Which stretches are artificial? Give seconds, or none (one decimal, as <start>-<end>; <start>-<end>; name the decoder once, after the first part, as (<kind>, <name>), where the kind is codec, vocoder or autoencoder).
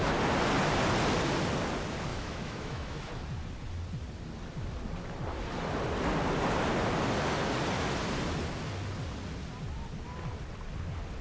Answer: 2.1-3.1 (autoencoder, DAC-VAE)